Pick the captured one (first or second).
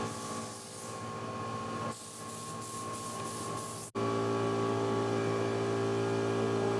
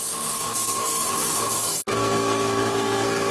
first